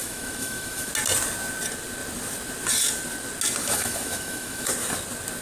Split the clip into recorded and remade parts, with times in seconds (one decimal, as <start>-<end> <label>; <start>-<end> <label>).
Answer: 0.0-0.9 remade; 0.9-3.6 recorded; 3.6-4.7 remade; 4.7-5.4 recorded

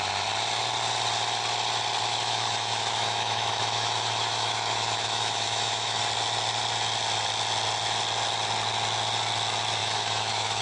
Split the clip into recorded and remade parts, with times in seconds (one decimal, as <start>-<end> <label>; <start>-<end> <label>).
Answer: 0.0-2.1 recorded; 2.1-6.0 remade; 6.0-9.8 recorded; 9.8-10.6 remade

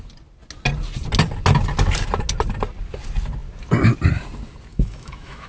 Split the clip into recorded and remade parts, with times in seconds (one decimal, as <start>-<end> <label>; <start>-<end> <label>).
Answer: 0.0-4.7 recorded; 4.7-5.5 remade

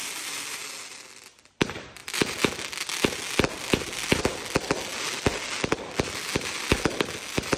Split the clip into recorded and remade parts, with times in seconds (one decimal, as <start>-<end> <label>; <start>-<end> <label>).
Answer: 0.0-7.6 recorded

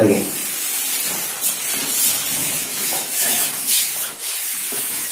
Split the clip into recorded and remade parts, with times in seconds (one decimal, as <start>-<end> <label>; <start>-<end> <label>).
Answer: 0.0-2.4 recorded; 2.4-5.1 remade

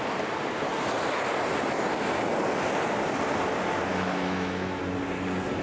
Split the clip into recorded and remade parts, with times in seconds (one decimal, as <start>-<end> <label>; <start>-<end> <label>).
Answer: 0.0-3.9 recorded; 3.9-4.8 remade; 4.8-5.6 recorded